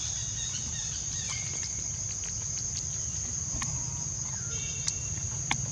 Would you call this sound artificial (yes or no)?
no